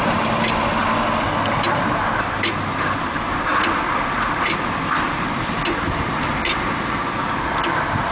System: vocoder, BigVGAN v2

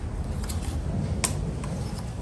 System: none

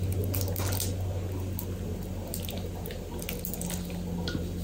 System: none